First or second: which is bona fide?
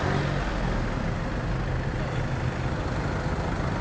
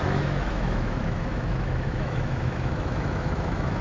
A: first